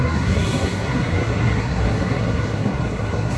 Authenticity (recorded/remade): remade